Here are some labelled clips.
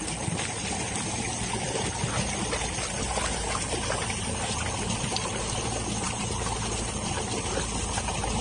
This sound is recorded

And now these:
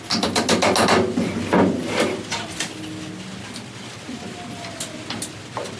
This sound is recorded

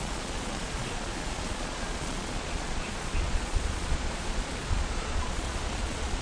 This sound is remade